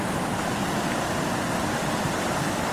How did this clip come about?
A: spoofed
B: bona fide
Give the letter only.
B